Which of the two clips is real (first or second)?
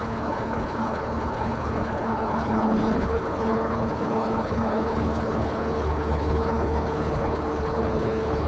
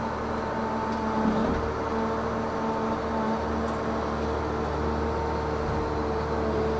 second